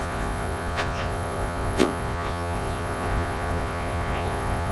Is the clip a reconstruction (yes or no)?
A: yes